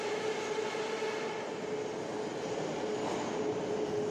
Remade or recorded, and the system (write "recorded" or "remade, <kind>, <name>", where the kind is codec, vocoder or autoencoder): recorded